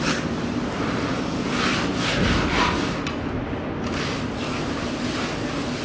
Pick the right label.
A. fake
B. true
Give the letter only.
B